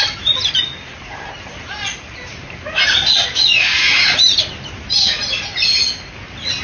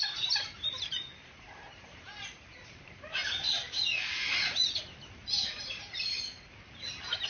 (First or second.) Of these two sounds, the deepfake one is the second